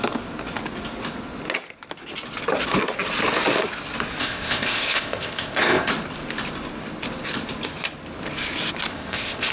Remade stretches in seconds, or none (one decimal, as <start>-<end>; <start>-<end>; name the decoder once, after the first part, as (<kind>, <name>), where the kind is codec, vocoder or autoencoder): 4.2-5.9 (codec, ZipCodec); 8.9-9.5